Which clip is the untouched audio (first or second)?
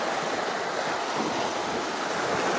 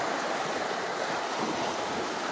first